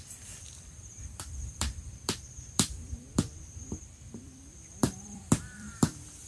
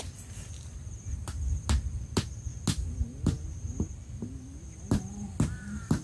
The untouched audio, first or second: second